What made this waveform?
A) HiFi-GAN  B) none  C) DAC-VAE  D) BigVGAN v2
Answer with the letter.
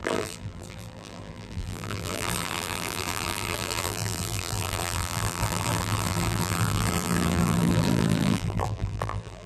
D